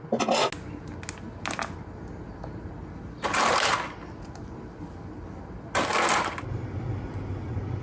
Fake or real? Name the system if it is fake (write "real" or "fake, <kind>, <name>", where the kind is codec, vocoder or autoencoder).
real